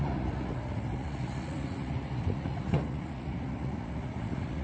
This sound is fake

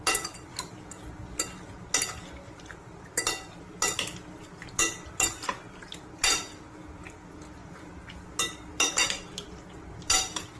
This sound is real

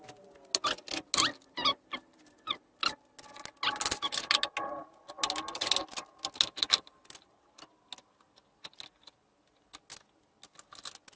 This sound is real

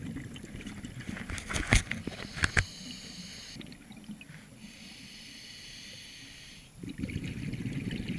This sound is real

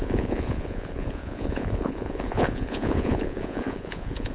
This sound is fake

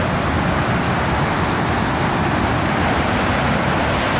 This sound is real